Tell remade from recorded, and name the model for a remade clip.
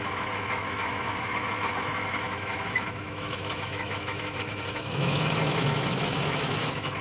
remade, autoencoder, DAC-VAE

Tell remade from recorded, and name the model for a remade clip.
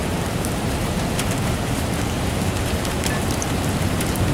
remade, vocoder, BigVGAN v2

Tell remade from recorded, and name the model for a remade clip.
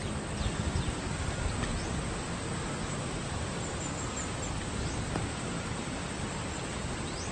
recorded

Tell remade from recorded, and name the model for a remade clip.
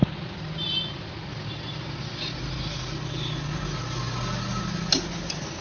recorded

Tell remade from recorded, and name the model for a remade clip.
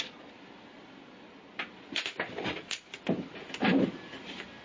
recorded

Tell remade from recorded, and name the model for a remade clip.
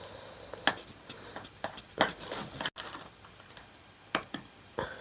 recorded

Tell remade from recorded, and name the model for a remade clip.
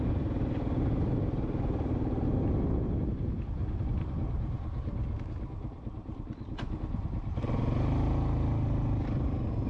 recorded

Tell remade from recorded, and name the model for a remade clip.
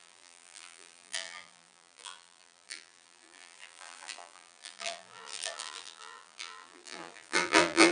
remade, vocoder, BigVGAN v2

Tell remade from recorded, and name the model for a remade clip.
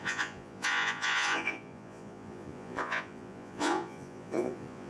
remade, vocoder, Vocos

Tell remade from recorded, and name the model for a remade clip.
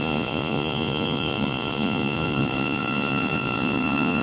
remade, vocoder, Vocos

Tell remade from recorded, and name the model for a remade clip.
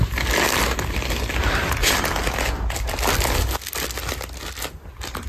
recorded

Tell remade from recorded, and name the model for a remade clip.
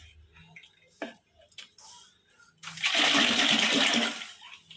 recorded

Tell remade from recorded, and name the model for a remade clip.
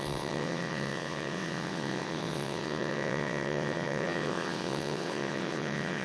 remade, vocoder, WaveNeXt